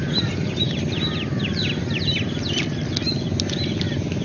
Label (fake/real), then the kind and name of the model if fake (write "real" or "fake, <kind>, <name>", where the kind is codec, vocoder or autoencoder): real